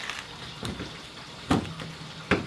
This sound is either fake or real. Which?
real